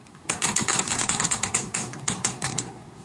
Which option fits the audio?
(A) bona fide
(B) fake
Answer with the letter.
B